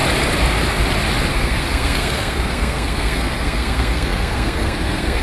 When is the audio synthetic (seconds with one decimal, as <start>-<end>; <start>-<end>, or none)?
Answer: 1.3-5.2